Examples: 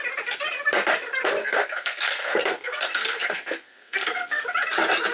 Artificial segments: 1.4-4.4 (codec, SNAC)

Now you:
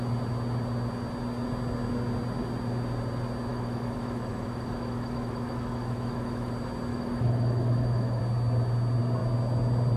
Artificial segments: 3.5-6.5 (autoencoder, DAC-VAE); 6.9-8.2

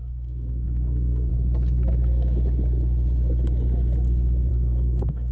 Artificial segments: 0.0-1.3 (codec, SNAC); 4.5-5.3

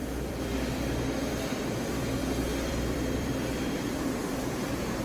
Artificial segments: 0.0-5.0 (vocoder, BigVGAN v2)

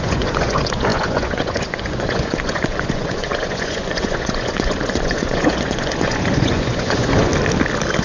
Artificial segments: 0.0-7.3 (vocoder, Vocos)

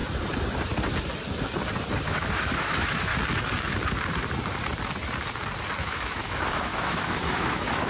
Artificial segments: 2.0-3.1 (autoencoder, DAC-VAE); 5.8-7.9

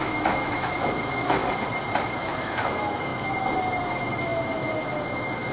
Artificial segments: 0.0-1.4 (autoencoder, DAC-VAE); 2.1-5.5

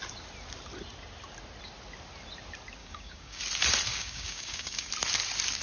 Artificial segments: 2.8-3.4 (codec, DAC); 3.9-4.9